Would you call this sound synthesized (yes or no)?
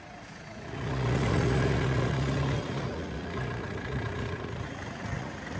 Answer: yes